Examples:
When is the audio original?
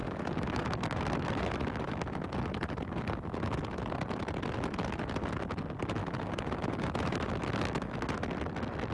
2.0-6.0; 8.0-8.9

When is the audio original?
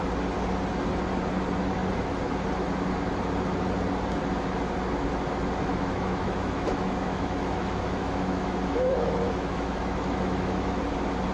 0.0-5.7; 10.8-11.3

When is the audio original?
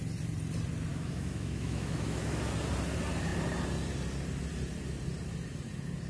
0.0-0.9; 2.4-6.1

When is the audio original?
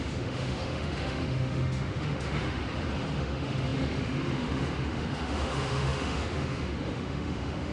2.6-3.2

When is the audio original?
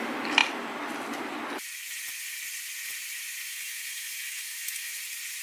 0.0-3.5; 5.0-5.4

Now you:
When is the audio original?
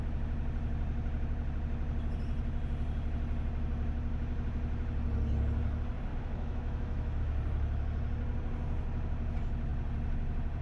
0.0-6.1; 7.2-10.6